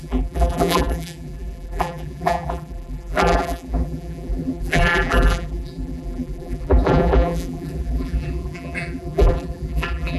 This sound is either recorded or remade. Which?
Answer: remade